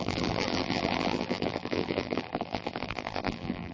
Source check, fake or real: fake